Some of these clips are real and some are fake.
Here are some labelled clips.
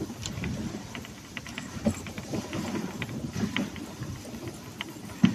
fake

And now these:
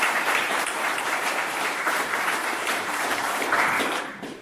fake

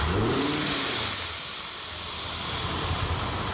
real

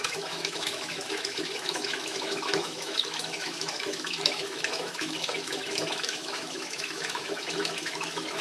fake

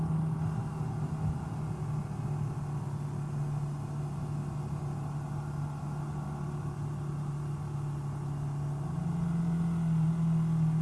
real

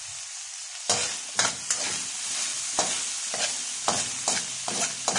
real